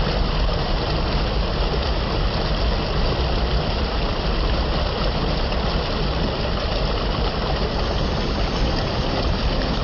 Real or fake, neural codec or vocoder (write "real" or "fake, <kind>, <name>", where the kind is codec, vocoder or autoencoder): real